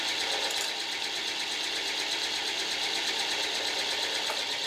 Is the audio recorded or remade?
recorded